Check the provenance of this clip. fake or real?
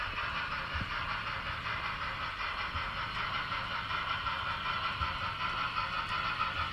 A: real